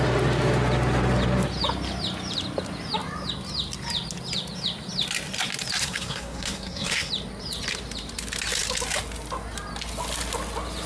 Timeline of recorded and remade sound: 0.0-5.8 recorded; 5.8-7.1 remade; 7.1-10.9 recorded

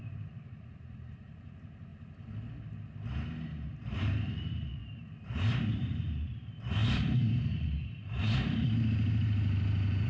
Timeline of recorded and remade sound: 0.0-1.9 remade; 1.9-3.7 recorded; 3.7-10.1 remade

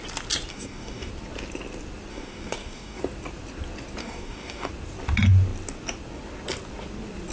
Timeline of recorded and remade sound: 0.0-0.5 recorded; 0.5-1.1 remade; 1.1-2.1 recorded; 2.1-3.0 remade; 3.0-4.0 recorded; 4.0-4.7 remade; 4.7-7.3 recorded

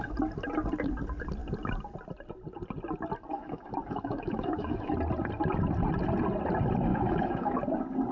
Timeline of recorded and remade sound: 0.0-3.3 recorded; 3.3-4.9 remade; 4.9-6.9 recorded; 6.9-7.6 remade; 7.6-8.1 recorded

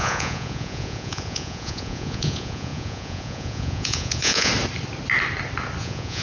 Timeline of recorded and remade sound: 0.0-4.5 remade; 4.5-5.8 recorded; 5.8-6.2 remade

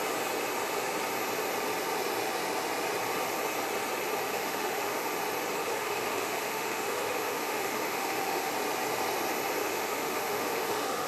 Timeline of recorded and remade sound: 0.0-4.3 recorded; 4.3-5.1 remade; 5.1-5.6 recorded; 5.6-8.5 remade; 8.5-9.6 recorded; 9.6-11.1 remade

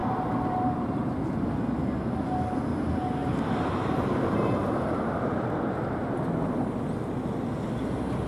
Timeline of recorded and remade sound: 0.0-1.1 remade; 1.1-3.2 recorded; 3.2-4.7 remade; 4.7-8.3 recorded

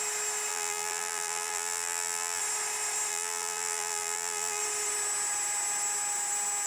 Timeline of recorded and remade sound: 0.0-0.5 recorded; 0.5-2.4 remade; 2.4-3.1 recorded; 3.1-4.6 remade; 4.6-6.7 recorded